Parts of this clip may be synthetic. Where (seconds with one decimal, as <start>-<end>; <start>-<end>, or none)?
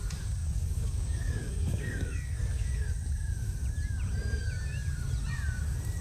0.4-2.9